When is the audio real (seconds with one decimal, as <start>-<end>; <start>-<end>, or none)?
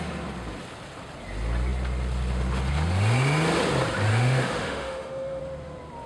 0.0-4.1; 5.4-6.1